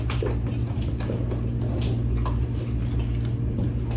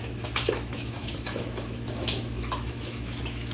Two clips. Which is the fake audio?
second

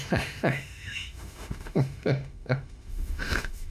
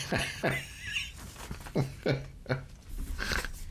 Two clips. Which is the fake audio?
first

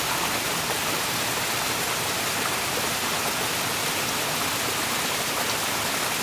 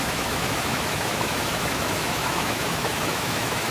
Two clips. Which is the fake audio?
second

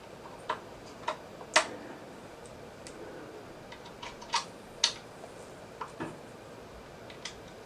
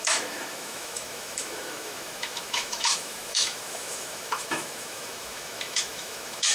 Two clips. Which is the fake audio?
second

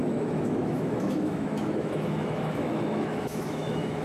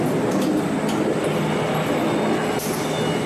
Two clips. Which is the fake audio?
first